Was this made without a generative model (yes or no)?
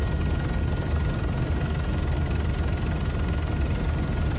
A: yes